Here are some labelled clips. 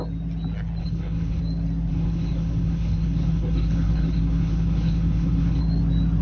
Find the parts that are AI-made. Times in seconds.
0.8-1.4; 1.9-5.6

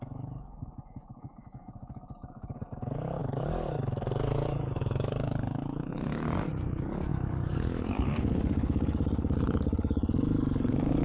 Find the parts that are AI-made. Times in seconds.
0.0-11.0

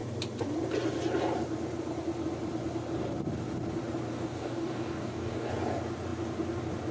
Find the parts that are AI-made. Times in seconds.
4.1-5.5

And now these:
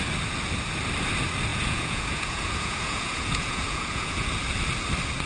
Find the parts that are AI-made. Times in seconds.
1.5-4.3

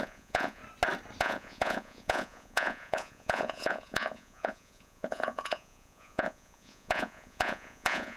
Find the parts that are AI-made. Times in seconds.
0.0-0.6; 1.2-8.2

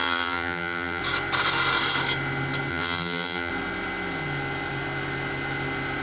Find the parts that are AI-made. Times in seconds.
0.0-1.0; 2.7-3.5